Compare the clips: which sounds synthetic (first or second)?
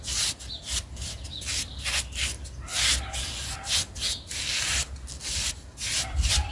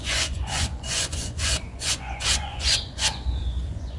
second